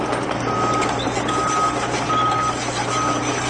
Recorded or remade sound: recorded